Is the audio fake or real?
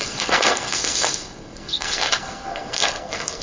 fake